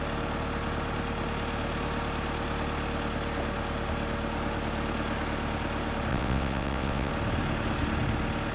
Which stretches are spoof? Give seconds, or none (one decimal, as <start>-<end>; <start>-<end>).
6.1-7.1